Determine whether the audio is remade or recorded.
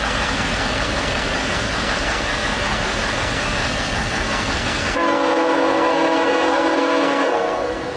remade